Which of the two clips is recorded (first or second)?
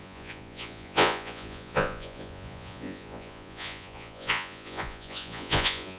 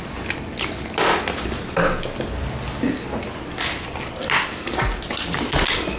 second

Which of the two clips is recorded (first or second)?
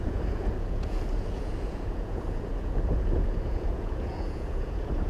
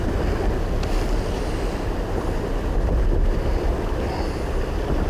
second